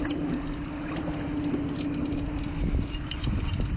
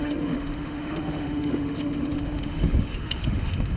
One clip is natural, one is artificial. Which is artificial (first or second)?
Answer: second